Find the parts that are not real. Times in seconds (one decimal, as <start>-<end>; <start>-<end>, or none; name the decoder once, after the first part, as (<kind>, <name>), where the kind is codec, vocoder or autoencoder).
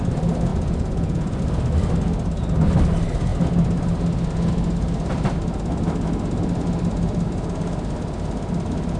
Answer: 0.5-1.4 (vocoder, Vocos)